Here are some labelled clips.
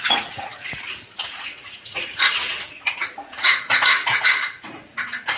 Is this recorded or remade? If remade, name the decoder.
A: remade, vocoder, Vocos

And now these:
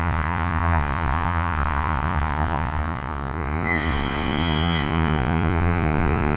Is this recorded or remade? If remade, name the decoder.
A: remade, vocoder, Vocos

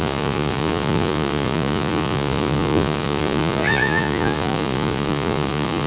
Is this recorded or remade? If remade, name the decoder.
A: remade, vocoder, Vocos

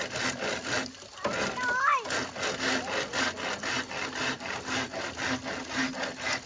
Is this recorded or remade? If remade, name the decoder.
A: recorded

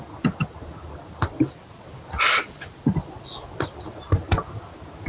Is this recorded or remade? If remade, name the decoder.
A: recorded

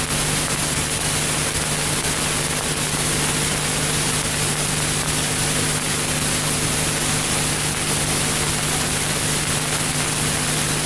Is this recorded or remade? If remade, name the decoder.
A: recorded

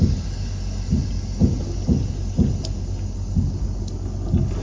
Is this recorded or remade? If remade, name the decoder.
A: recorded